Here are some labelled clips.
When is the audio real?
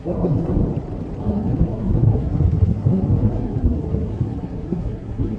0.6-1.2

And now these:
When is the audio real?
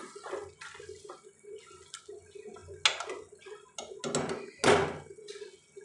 0.0-5.8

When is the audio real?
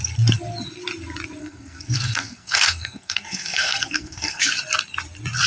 0.0-1.4; 4.5-5.5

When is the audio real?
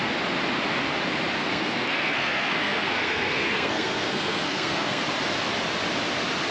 0.0-1.4; 5.0-6.5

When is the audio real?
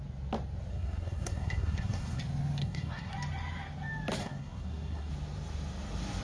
0.0-0.7; 2.2-2.6; 3.1-4.2; 5.1-6.2